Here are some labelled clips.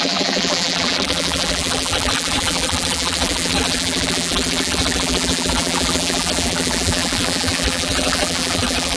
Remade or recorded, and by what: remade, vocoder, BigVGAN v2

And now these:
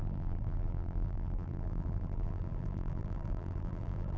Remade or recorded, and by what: remade, vocoder, BigVGAN v2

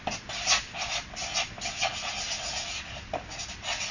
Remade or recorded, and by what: recorded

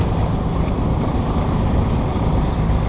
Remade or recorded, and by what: remade, vocoder, BigVGAN v2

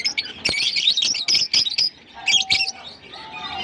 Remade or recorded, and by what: recorded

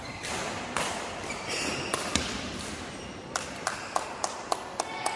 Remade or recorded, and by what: remade, vocoder, BigVGAN v2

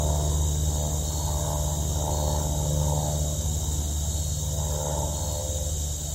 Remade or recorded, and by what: recorded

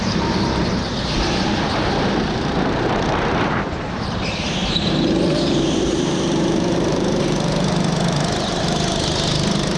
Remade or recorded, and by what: remade, vocoder, BigVGAN v2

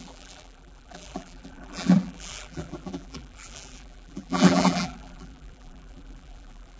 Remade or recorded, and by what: remade, vocoder, BigVGAN v2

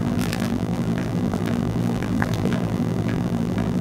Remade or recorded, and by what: remade, vocoder, BigVGAN v2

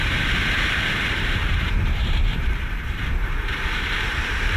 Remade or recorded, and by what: remade, vocoder, BigVGAN v2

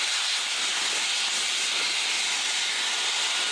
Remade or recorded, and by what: recorded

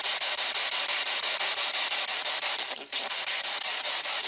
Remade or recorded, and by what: recorded